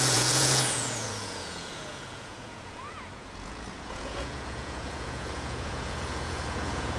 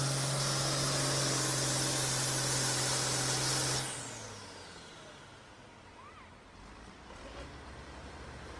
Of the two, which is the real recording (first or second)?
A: second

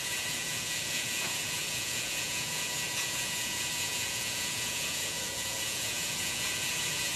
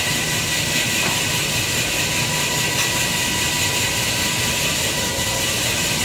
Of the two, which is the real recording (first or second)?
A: second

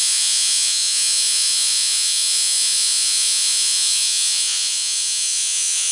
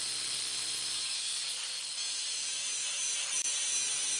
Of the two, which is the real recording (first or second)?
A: second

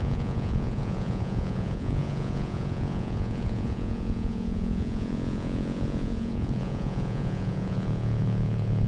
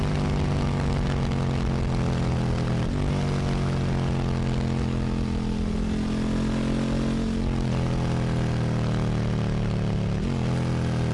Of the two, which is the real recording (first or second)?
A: second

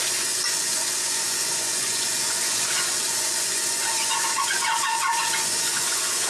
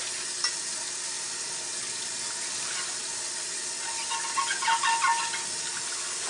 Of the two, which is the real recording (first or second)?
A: second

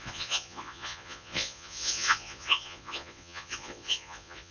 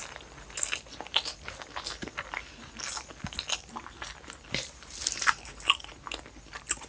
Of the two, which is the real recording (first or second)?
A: second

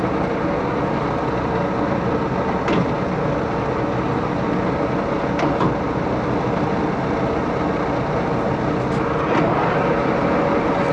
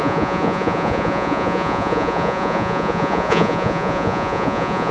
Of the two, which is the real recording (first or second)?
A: first